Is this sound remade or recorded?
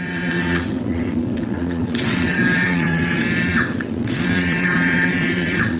remade